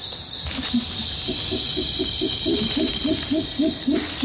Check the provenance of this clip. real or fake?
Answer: real